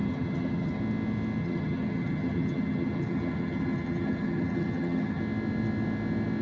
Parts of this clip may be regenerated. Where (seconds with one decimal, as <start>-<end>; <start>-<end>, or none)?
0.0-0.8; 1.4-5.2